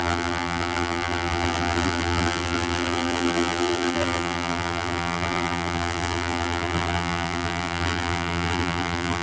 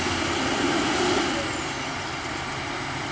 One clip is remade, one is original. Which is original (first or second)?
second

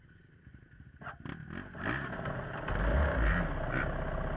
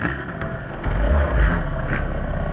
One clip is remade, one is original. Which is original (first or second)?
first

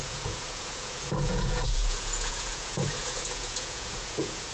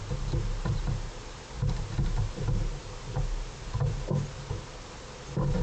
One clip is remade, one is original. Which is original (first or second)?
second